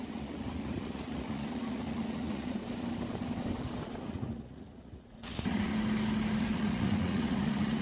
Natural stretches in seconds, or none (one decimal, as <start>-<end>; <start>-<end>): 2.6-4.0; 5.7-6.4

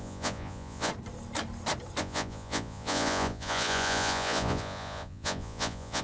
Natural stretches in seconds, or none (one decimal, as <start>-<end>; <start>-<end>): 0.9-2.0

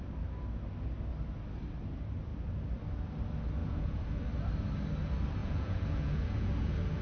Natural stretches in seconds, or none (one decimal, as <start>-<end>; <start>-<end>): 0.0-3.6; 4.2-5.4